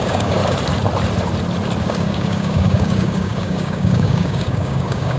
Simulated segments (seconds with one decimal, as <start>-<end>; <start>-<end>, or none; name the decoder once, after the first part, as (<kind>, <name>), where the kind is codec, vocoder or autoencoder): 0.0-0.4 (codec, DAC); 1.8-5.2